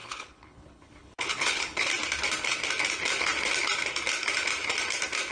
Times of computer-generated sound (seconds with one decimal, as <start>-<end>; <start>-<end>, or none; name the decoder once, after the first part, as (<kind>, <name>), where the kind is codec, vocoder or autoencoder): 0.0-1.9 (codec, HILCodec)